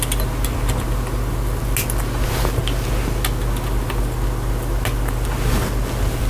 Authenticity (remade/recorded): recorded